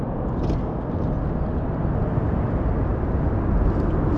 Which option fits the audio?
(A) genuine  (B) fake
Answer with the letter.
A